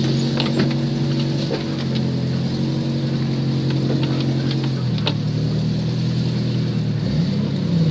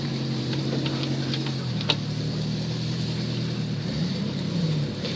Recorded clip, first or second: first